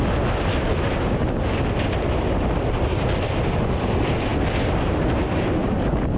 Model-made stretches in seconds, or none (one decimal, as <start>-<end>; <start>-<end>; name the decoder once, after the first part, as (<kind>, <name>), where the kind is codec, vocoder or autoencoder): none

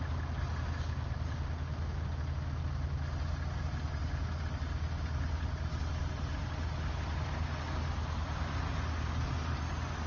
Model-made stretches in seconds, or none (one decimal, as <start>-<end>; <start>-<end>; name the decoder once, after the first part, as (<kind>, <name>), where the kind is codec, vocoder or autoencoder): none

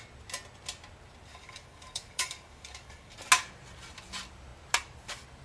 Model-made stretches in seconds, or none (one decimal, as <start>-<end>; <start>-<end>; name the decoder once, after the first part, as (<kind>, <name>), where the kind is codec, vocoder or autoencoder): 1.3-3.1 (codec, DAC)

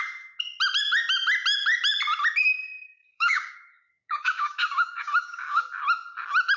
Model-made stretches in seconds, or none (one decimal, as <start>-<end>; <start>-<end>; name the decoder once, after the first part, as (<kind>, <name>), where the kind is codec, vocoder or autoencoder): 2.4-5.6 (codec, DAC)

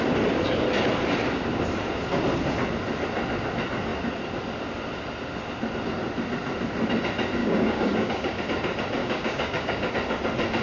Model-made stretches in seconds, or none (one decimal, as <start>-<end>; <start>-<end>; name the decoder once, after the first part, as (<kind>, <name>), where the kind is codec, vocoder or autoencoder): 7.4-8.4 (codec, DAC); 9.0-9.9

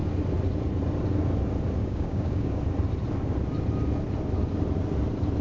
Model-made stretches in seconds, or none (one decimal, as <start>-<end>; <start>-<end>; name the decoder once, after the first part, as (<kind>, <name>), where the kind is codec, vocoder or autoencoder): 1.8-2.6 (codec, DAC)

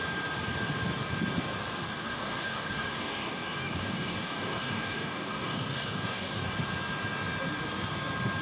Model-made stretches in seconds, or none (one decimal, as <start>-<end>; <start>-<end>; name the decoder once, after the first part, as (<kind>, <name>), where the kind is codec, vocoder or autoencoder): 1.8-6.5 (codec, DAC)

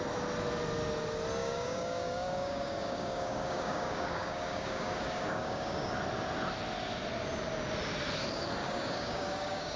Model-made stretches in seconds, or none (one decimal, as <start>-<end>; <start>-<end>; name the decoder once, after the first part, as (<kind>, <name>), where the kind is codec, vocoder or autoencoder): 1.4-5.9 (codec, DAC); 8.6-9.8